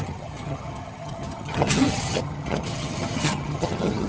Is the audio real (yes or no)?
no